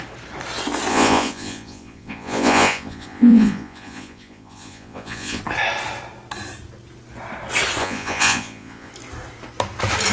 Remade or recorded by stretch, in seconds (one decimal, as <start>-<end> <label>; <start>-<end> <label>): 0.0-0.9 recorded; 0.9-5.4 remade; 5.4-7.8 recorded; 7.8-8.9 remade; 8.9-10.1 recorded